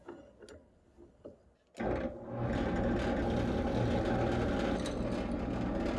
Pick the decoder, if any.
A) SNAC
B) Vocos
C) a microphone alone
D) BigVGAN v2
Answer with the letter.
C